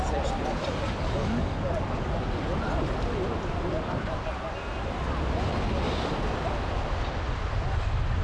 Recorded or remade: recorded